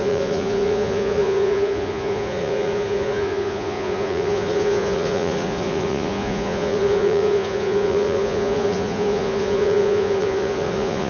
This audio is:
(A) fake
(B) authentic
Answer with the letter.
A